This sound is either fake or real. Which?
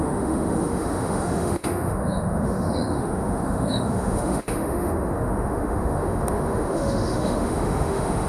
fake